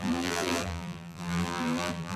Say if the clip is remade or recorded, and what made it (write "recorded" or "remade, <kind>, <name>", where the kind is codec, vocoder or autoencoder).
remade, vocoder, BigVGAN v2